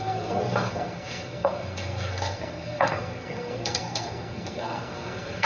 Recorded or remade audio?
remade